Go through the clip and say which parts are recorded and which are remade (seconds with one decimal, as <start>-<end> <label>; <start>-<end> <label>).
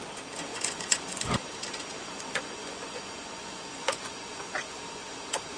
0.0-0.5 recorded; 0.5-1.3 remade; 1.3-2.0 recorded; 2.0-5.6 remade